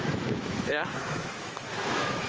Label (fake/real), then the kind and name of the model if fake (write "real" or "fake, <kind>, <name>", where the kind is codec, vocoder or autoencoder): fake, autoencoder, DAC-VAE